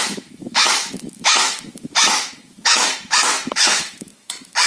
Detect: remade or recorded remade